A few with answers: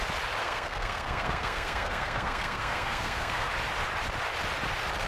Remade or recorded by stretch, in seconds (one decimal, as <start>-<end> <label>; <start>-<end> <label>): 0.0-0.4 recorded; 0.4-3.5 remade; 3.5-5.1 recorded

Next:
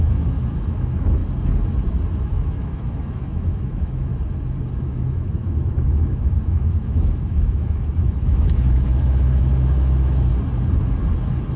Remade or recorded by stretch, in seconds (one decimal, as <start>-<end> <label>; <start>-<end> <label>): 0.0-1.2 remade; 1.2-2.2 recorded; 2.2-4.1 remade; 4.1-4.7 recorded; 4.7-10.3 remade; 10.3-11.6 recorded

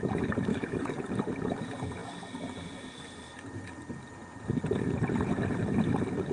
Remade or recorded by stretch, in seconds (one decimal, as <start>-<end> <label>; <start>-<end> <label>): 0.0-0.5 recorded; 0.5-1.1 remade; 1.1-6.3 recorded